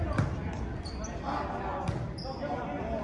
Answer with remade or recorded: recorded